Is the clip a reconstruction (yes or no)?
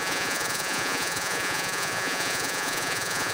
yes